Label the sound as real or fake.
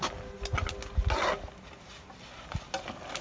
real